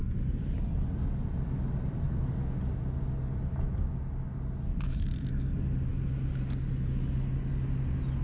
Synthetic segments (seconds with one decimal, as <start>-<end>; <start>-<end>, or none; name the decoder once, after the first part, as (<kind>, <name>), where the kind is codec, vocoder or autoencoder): 2.0-2.6 (codec, SNAC)